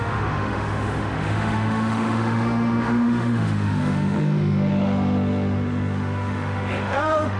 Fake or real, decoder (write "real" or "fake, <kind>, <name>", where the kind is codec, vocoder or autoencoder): fake, autoencoder, DAC-VAE